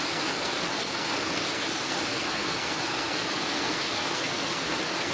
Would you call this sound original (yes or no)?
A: no